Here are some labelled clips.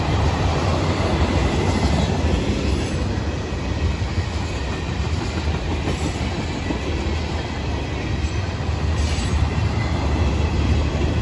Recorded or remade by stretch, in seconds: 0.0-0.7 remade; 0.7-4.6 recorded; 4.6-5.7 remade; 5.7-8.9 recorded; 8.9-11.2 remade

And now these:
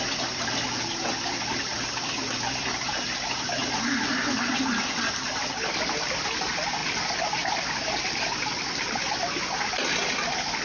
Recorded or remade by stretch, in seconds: 0.0-1.7 recorded; 1.7-2.6 remade; 2.6-3.6 recorded; 3.6-4.8 remade; 4.8-10.6 recorded

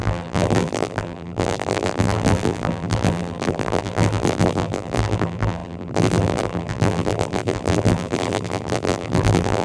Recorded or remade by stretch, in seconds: 0.0-9.6 remade

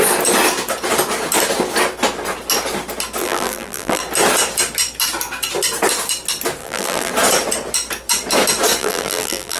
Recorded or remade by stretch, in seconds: 0.0-3.2 recorded; 3.2-4.0 remade; 4.0-6.6 recorded; 6.6-7.1 remade; 7.1-8.8 recorded; 8.8-9.6 remade